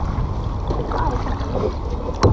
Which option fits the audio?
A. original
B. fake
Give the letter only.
A